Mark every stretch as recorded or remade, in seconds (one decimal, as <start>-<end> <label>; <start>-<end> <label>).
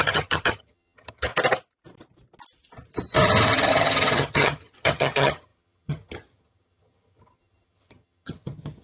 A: 0.0-1.3 remade; 1.3-3.7 recorded; 3.7-8.8 remade